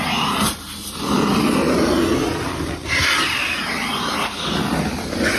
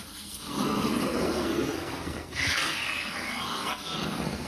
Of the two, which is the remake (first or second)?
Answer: second